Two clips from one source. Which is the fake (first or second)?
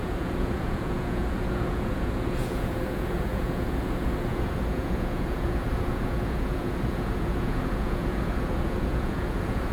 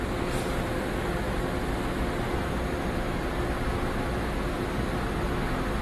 first